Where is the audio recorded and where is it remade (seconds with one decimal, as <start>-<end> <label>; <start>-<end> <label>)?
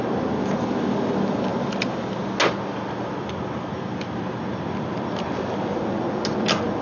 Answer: 0.0-6.8 recorded